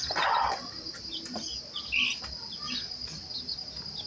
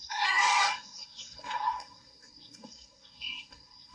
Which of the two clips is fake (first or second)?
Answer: second